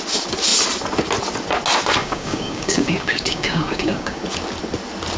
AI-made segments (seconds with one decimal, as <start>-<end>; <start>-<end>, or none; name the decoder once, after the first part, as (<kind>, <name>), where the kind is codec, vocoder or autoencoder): 2.0-4.2 (codec, DAC)